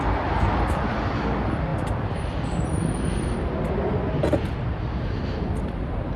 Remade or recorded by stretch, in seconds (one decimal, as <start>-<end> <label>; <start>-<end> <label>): 0.0-6.2 recorded